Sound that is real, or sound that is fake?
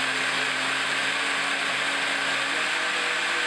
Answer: real